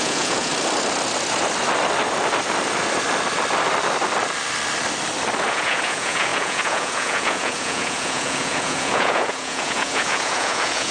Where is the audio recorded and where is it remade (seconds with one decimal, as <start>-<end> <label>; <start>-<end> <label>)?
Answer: 0.0-0.5 remade; 0.5-5.5 recorded; 5.5-10.9 remade